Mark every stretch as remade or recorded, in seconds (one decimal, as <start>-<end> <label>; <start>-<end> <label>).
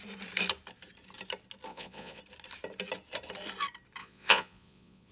0.0-1.7 recorded; 1.7-2.2 remade; 2.2-4.0 recorded; 4.0-5.1 remade